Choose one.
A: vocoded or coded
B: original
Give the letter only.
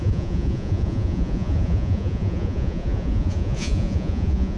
A